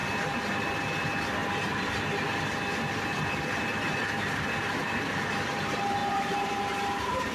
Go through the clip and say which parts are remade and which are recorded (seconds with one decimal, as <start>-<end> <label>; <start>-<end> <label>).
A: 0.0-1.4 recorded; 1.4-2.0 remade; 2.0-6.0 recorded; 6.0-6.5 remade; 6.5-7.3 recorded